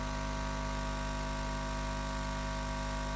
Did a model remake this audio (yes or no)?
no